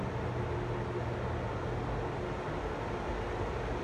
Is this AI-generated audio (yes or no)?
no